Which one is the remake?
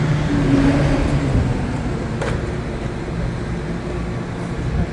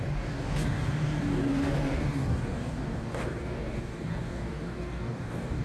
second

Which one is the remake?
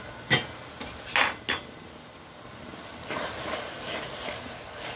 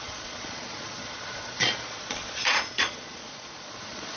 second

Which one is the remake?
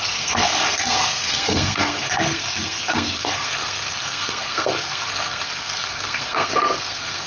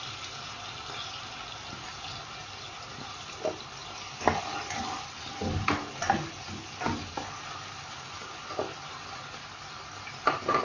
first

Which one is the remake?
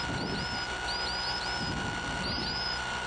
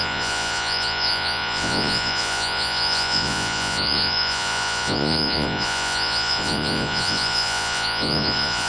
second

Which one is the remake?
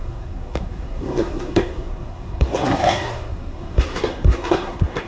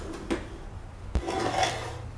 first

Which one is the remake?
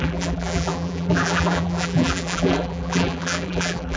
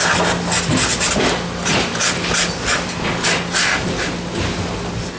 first